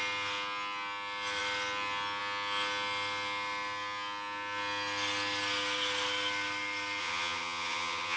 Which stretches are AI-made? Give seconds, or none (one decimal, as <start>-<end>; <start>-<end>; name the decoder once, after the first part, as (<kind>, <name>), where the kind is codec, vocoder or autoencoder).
7.0-8.2 (vocoder, HiFi-GAN)